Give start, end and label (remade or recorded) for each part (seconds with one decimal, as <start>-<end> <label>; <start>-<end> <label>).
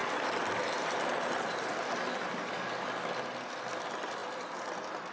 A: 0.0-5.1 recorded